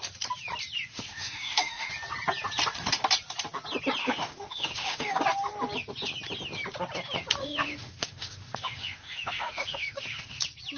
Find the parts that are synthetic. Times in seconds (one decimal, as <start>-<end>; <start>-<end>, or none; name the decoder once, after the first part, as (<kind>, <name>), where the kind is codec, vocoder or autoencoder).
0.9-1.9 (autoencoder, DAC-VAE); 4.0-5.2; 7.4-10.4